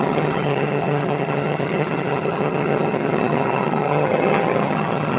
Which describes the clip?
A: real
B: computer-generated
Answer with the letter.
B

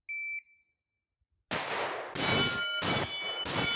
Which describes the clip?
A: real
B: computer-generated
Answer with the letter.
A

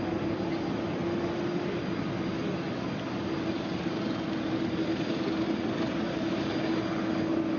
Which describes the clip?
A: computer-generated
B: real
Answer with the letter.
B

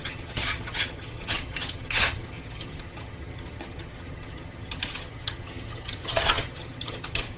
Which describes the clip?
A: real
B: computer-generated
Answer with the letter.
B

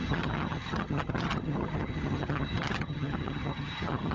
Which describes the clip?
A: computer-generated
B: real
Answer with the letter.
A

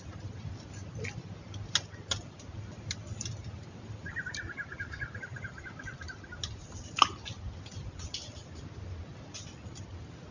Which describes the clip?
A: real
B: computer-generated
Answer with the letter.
A